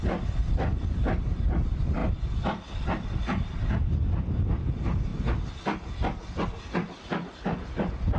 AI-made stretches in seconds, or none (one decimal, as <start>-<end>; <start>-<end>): none